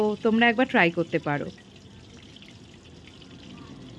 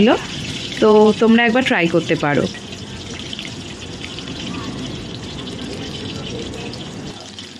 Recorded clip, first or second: first